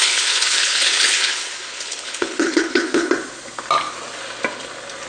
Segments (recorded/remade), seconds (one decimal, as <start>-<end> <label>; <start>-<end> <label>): 0.0-3.1 remade; 3.1-5.1 recorded